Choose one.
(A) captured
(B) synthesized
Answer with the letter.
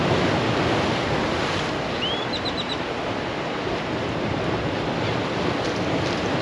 A